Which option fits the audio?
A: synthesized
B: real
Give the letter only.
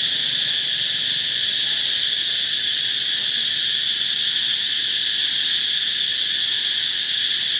B